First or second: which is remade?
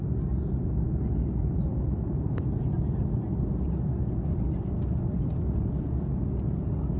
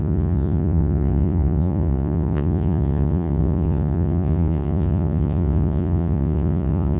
second